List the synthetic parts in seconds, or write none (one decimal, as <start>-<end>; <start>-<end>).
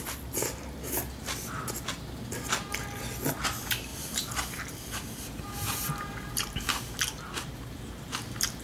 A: 3.9-8.6